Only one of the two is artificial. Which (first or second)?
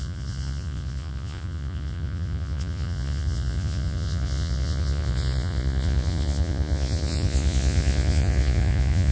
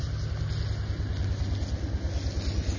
first